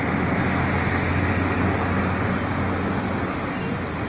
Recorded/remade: recorded